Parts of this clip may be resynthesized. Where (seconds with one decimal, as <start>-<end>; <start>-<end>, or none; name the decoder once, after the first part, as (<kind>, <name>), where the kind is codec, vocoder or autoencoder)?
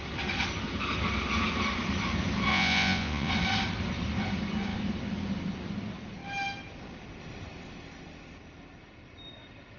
2.5-3.3 (vocoder, Vocos)